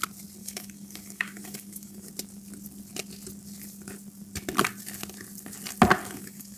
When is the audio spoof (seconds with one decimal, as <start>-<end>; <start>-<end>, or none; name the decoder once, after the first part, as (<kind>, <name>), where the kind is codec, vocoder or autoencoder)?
0.4-2.1 (codec, DAC); 6.0-6.6